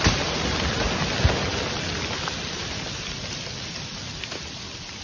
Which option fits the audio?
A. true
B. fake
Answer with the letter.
A